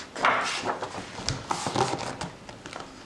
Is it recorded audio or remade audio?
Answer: recorded